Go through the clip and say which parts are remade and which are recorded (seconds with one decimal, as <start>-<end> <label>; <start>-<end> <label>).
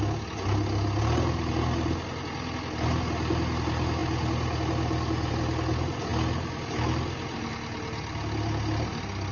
0.0-9.3 recorded